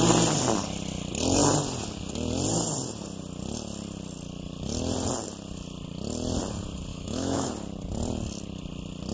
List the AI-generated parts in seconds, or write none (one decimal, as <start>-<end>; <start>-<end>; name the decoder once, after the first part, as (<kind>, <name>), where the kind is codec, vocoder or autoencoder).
6.9-7.5 (autoencoder, DAC-VAE)